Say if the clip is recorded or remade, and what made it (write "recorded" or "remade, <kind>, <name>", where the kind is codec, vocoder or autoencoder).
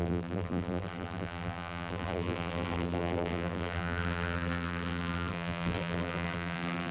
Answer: remade, vocoder, BigVGAN v2